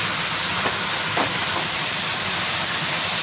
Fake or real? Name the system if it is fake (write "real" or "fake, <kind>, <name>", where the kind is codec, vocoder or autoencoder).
real